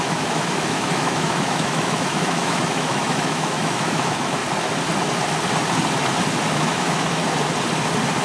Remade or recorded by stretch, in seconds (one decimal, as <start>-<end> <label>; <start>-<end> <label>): 0.0-4.4 remade; 4.4-6.5 recorded; 6.5-7.2 remade; 7.2-8.2 recorded